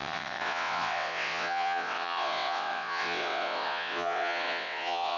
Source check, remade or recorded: remade